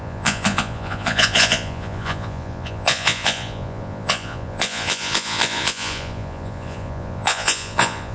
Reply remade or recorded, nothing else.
remade